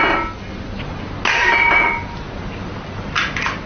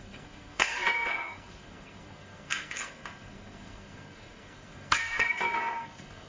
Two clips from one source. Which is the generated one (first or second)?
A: second